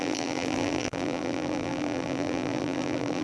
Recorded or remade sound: remade